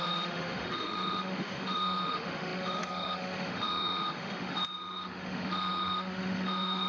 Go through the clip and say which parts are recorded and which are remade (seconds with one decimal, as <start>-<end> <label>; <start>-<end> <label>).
0.0-6.9 remade